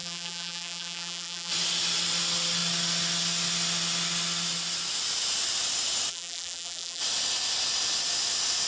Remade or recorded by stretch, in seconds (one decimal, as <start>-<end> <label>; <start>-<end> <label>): 0.0-1.5 remade; 1.5-6.1 recorded; 6.1-7.0 remade; 7.0-8.7 recorded